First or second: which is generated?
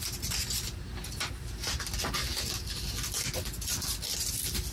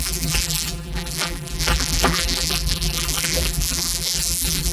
second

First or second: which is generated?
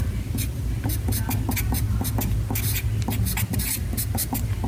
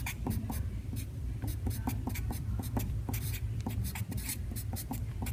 second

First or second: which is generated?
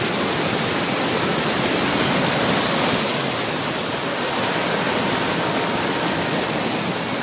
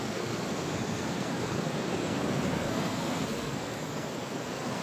second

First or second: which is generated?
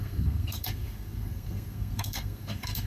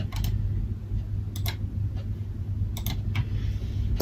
first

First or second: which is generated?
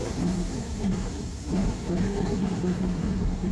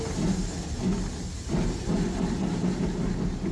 first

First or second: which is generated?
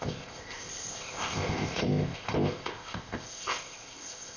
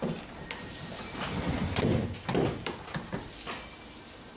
first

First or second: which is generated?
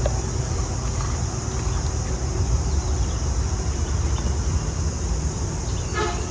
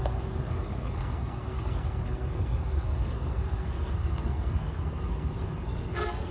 second